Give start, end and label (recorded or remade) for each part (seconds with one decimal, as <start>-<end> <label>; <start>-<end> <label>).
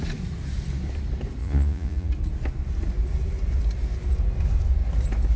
0.0-1.4 recorded; 1.4-2.1 remade; 2.1-5.4 recorded